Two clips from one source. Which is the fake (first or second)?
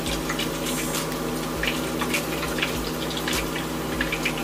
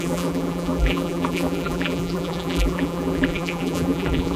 second